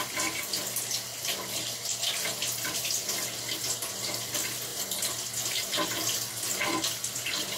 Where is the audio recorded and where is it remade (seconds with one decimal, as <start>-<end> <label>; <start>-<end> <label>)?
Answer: 0.0-7.6 recorded